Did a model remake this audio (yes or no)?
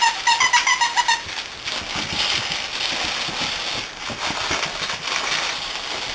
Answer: no